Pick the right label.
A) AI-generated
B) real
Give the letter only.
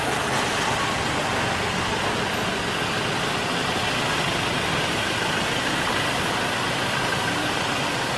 B